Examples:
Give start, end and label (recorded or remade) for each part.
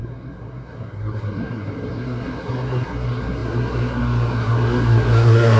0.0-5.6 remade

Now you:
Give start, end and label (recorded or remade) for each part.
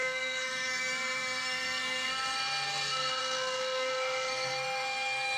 0.0-5.4 remade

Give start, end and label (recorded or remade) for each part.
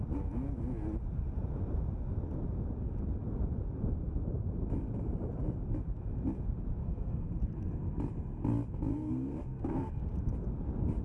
0.0-6.8 recorded; 6.8-7.3 remade; 7.3-8.9 recorded; 8.9-9.9 remade; 9.9-11.0 recorded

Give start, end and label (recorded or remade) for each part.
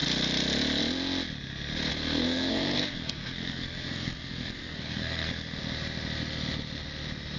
0.0-1.9 recorded; 1.9-5.6 remade; 5.6-7.4 recorded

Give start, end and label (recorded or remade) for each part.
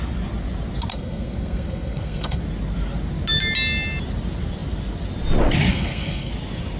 0.0-0.9 recorded; 0.9-2.4 remade; 2.4-5.7 recorded; 5.7-6.3 remade; 6.3-6.8 recorded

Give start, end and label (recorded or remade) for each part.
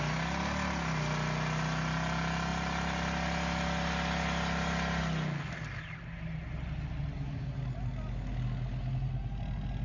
0.0-9.8 recorded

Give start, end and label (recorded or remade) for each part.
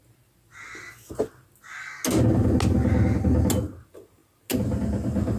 0.0-5.4 recorded